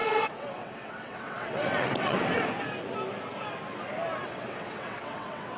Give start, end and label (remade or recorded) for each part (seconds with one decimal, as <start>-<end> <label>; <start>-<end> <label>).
0.0-2.5 remade; 2.5-4.2 recorded; 4.2-5.6 remade